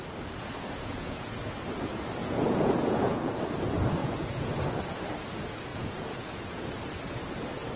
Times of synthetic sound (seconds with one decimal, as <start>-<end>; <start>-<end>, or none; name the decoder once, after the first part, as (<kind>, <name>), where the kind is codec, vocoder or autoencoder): 0.4-1.4 (vocoder, Vocos); 2.2-3.3; 4.0-4.8; 5.7-6.6